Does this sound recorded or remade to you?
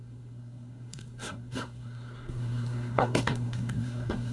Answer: remade